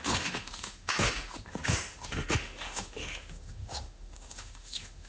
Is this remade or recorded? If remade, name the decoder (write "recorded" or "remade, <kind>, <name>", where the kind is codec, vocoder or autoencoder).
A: remade, autoencoder, DAC-VAE